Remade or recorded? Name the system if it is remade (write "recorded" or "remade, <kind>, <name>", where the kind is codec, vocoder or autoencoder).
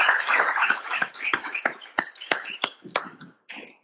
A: remade, autoencoder, DAC-VAE